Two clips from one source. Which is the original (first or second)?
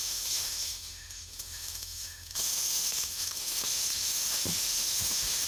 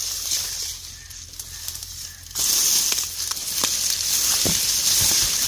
second